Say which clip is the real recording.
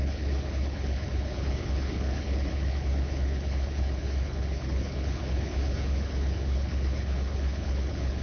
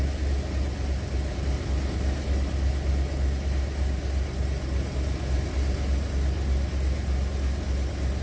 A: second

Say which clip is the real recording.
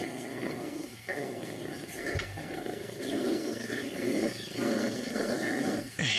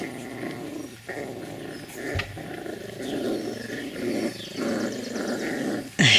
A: second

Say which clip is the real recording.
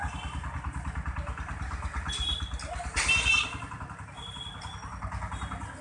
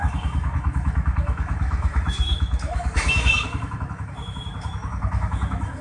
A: first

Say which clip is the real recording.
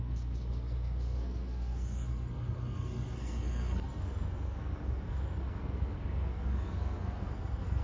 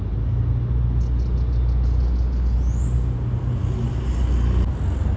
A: second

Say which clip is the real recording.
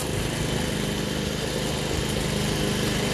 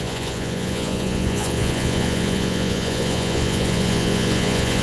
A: first